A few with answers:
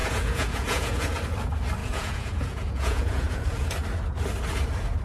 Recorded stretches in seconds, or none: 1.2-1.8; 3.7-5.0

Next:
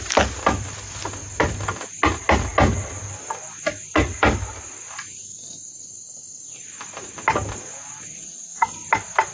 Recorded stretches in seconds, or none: 0.0-9.3

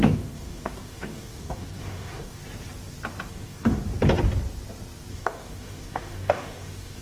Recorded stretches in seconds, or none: 2.4-3.3; 3.8-5.1

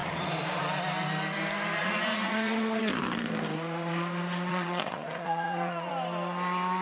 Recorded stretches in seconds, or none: 0.6-1.8; 2.8-4.5; 5.9-6.8

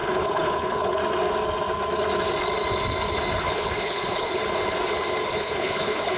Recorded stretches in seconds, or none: 1.0-3.4; 4.4-5.3

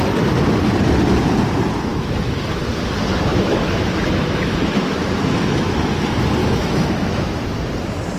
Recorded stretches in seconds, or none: 0.0-1.9; 2.6-3.3; 5.9-6.4; 7.4-8.2

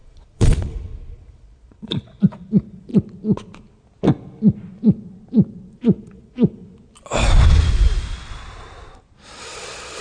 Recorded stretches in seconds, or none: 2.9-5.8; 6.6-9.4

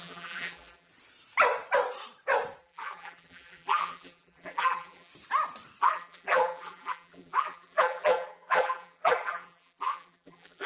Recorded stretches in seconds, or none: 0.9-2.6; 5.1-5.8